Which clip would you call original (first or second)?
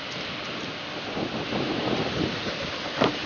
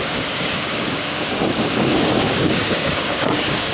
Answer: first